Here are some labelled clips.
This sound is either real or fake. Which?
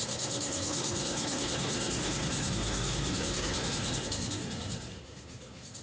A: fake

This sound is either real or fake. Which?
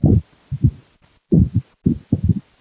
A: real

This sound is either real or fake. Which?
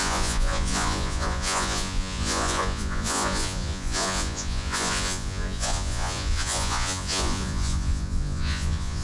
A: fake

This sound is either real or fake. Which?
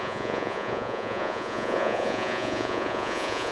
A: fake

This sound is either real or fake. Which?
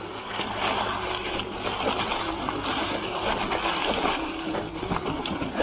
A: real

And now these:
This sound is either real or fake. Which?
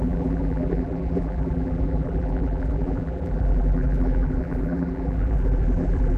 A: fake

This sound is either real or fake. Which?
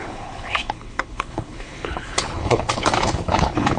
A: fake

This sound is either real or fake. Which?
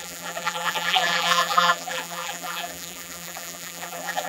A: fake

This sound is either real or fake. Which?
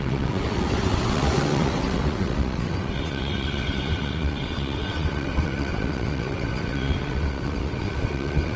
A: fake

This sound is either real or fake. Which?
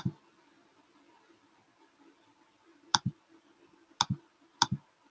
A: fake